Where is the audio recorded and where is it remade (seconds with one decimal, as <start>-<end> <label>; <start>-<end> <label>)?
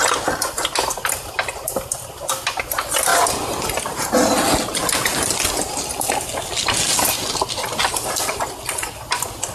0.0-9.5 recorded